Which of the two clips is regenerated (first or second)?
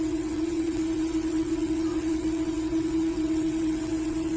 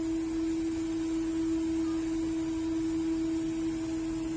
first